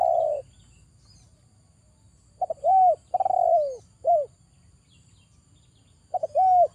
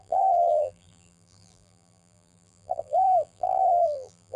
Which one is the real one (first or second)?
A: first